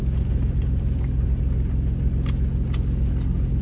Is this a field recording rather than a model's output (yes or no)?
yes